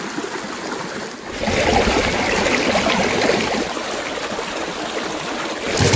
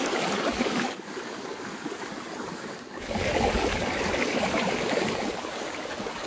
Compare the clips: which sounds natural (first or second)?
first